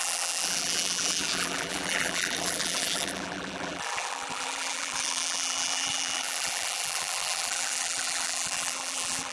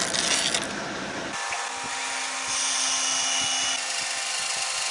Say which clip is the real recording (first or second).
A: second